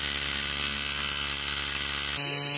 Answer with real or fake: real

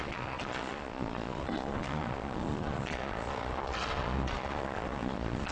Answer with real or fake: fake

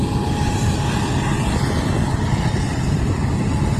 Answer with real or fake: real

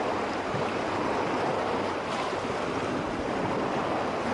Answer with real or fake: real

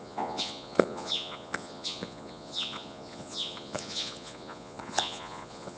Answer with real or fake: fake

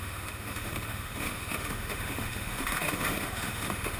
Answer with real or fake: fake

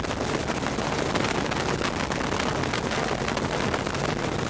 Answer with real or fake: real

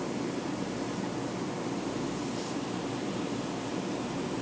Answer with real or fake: real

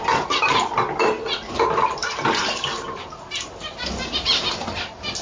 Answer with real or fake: real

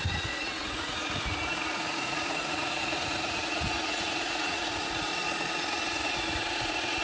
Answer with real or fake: fake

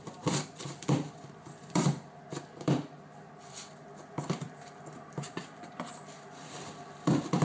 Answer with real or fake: fake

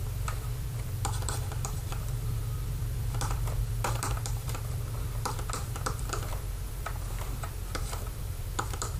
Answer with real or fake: fake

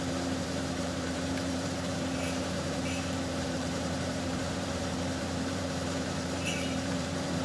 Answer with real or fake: fake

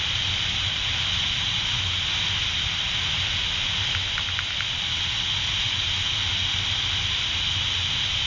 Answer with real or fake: real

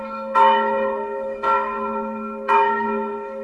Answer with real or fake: fake